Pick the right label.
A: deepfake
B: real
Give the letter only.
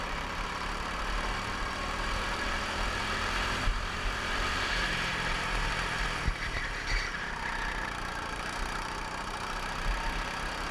A